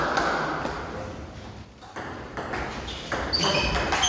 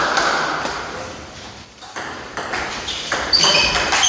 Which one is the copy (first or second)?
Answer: second